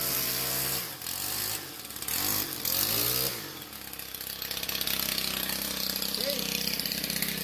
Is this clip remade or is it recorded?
recorded